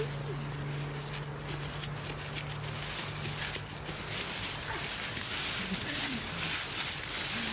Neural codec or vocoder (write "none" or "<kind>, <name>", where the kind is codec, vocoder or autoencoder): none